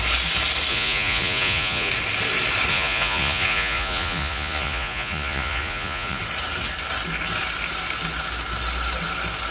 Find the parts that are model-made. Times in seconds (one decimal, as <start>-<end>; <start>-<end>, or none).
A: 0.7-1.9; 2.7-6.2